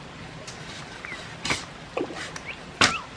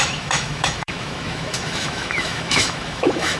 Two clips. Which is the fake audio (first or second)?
second